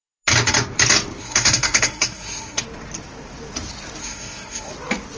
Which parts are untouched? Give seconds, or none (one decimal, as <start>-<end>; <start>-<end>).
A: 0.0-1.2; 2.6-4.0; 4.7-5.2